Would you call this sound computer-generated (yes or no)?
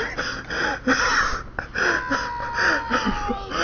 no